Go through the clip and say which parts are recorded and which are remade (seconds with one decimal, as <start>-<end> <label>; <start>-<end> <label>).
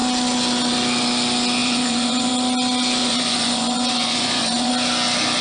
0.0-1.6 recorded; 1.6-2.3 remade; 2.3-3.0 recorded; 3.0-4.7 remade; 4.7-5.4 recorded